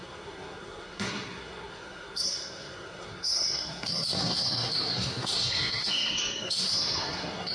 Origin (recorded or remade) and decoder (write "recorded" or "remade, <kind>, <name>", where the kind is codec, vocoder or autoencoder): remade, codec, SNAC